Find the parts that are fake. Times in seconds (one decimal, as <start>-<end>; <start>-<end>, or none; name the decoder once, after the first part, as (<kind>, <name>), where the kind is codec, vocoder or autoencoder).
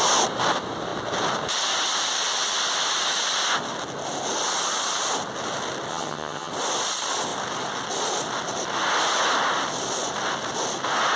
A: 5.9-6.5 (vocoder, HiFi-GAN)